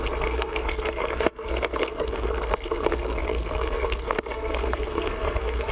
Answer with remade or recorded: remade